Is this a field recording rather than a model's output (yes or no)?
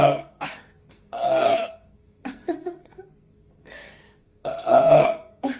no